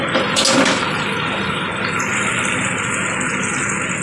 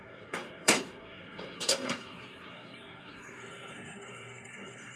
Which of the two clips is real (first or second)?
first